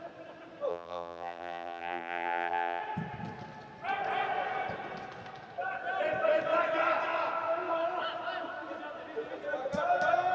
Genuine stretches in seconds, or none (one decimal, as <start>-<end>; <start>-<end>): 0.0-0.7; 2.8-10.3